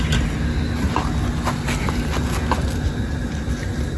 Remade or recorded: recorded